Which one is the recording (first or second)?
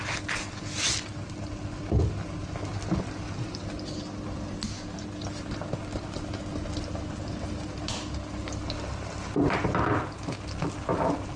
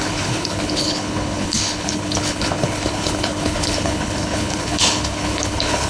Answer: first